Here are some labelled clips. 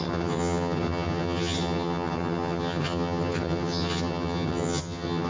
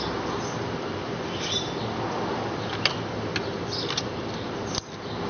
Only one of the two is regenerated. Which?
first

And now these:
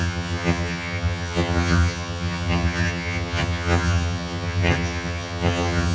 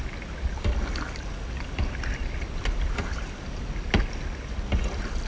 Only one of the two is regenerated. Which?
first